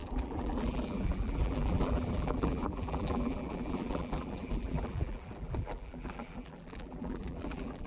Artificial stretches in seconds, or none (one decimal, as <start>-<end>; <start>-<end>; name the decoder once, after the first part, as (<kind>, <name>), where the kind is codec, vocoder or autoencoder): 0.0-7.9 (vocoder, BigVGAN v2)